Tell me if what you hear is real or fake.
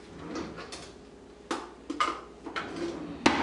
real